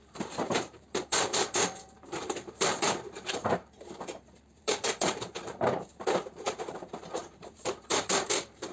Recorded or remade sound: remade